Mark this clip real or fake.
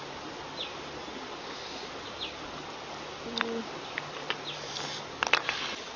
real